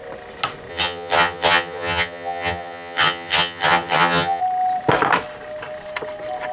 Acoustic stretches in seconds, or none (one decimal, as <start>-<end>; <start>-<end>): 0.0-0.7; 4.4-6.5